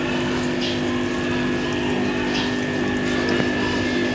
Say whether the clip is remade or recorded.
recorded